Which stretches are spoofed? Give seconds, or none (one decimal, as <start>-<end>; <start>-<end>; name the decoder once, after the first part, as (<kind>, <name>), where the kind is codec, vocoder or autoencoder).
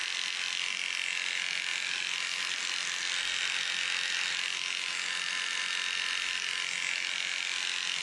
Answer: none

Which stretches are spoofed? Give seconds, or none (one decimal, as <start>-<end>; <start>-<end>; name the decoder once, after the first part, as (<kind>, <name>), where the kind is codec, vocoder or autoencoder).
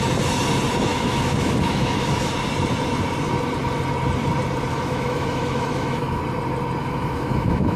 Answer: 0.9-2.3 (autoencoder, DAC-VAE); 4.7-6.2; 6.8-7.8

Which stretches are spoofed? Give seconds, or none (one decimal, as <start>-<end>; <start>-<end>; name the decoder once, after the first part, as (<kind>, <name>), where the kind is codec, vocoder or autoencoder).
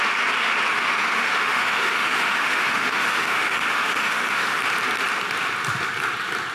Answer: 0.7-4.6 (autoencoder, DAC-VAE)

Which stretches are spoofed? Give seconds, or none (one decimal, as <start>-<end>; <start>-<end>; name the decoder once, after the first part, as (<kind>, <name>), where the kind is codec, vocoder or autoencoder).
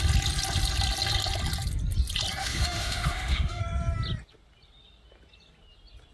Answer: 2.4-3.6 (autoencoder, DAC-VAE)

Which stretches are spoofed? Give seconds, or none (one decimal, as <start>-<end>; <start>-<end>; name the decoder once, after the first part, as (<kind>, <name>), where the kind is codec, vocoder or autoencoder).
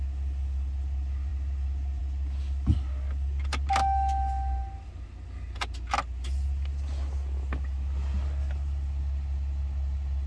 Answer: none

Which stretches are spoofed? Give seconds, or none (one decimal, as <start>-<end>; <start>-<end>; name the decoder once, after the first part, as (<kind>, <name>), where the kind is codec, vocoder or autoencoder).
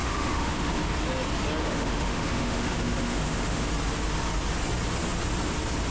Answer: 0.0-0.7 (autoencoder, DAC-VAE); 1.6-3.7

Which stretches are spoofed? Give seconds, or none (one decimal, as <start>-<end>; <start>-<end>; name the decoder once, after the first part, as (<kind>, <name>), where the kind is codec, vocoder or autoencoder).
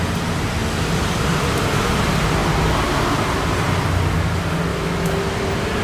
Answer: 4.7-5.2 (autoencoder, DAC-VAE)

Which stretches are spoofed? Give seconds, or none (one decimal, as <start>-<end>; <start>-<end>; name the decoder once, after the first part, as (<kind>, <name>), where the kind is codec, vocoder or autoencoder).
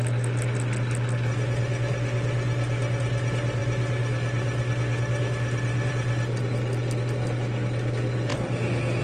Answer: none